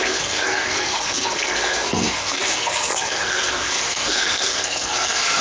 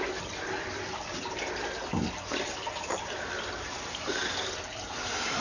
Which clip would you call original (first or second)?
second